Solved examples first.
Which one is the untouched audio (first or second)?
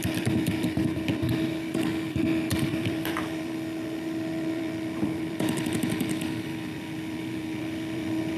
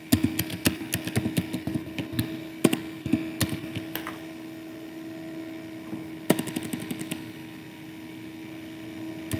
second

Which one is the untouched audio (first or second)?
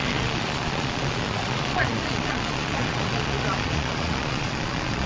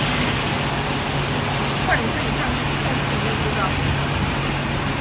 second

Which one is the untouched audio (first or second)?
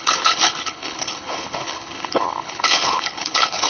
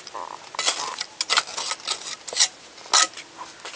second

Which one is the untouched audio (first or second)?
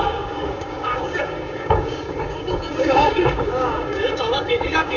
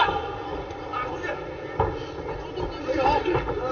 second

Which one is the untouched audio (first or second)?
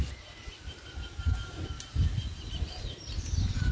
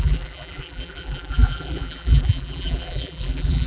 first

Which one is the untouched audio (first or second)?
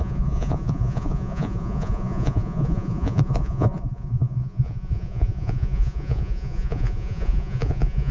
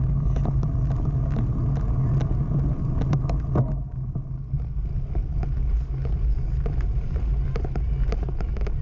second